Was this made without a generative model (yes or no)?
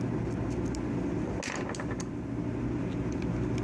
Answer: yes